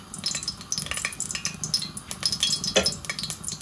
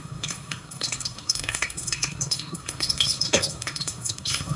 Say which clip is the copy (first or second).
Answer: second